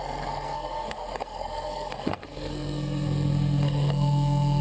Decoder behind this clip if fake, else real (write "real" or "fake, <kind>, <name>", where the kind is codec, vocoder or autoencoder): fake, codec, SNAC